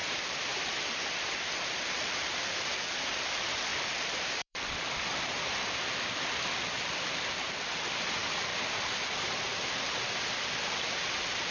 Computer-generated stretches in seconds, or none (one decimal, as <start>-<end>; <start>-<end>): 0.0-0.8; 3.7-6.5